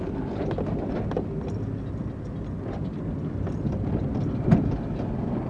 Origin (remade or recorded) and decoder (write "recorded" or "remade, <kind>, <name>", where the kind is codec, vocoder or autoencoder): recorded